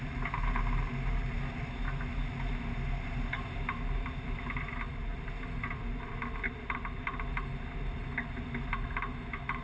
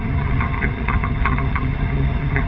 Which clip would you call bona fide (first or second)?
first